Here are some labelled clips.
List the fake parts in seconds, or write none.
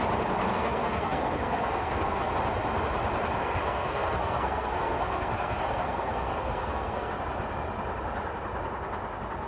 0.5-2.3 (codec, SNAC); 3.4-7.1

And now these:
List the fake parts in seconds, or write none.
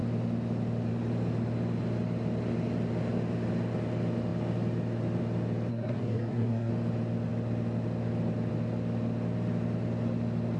5.7-6.7 (codec, SNAC)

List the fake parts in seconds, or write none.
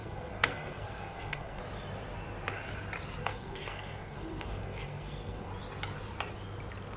0.0-1.6 (codec, SNAC); 3.2-5.5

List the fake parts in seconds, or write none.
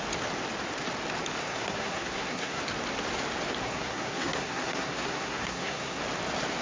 1.4-2.6 (codec, SNAC); 3.6-6.0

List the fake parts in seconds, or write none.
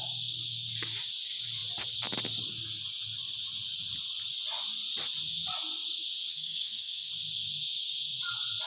6.3-7.1 (codec, SNAC)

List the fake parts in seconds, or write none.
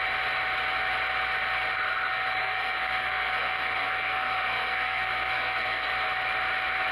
2.4-5.9 (codec, SNAC)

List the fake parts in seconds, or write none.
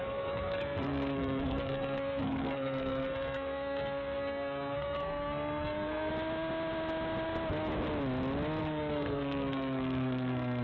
0.0-6.1 (codec, SNAC); 8.6-10.6